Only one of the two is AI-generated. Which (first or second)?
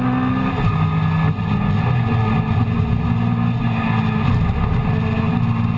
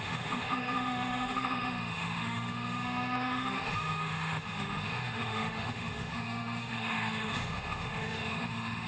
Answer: second